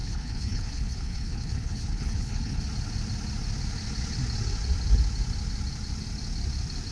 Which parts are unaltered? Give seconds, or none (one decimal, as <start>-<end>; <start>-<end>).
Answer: 2.6-6.9